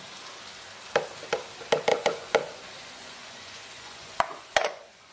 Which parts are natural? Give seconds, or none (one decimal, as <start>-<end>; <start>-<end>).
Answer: 0.0-1.9